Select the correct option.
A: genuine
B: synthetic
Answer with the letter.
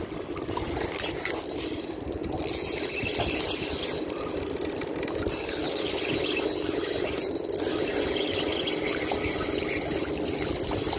A